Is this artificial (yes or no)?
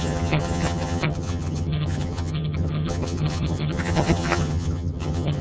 yes